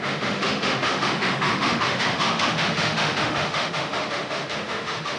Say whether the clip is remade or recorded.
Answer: remade